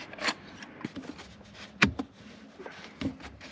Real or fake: real